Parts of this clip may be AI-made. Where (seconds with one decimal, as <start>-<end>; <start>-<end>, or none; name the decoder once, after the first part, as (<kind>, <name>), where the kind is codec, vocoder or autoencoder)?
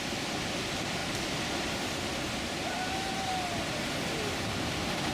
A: none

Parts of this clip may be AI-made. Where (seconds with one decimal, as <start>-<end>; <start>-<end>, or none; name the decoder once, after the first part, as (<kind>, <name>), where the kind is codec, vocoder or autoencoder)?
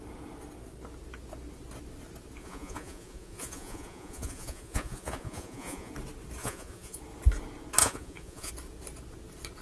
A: 2.4-5.9 (vocoder, Vocos); 6.4-7.0; 7.8-8.5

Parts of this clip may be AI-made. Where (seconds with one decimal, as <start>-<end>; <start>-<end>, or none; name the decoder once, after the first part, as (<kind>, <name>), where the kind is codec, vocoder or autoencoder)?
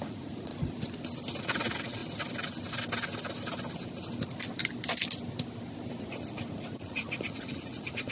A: 0.0-0.5 (vocoder, Vocos); 1.4-2.0; 6.0-8.1